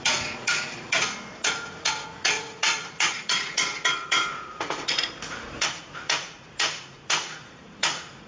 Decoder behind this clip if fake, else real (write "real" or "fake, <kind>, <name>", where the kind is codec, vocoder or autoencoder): fake, vocoder, Vocos